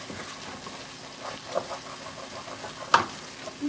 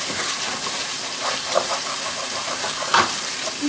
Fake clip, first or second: second